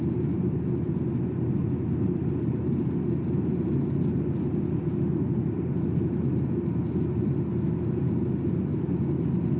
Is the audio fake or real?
real